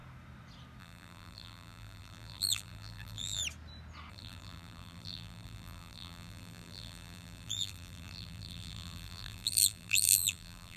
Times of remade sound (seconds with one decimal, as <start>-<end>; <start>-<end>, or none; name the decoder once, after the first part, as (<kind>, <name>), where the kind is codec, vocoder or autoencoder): 0.8-3.4 (vocoder, BigVGAN v2); 4.1-10.8